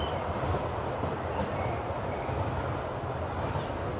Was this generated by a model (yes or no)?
no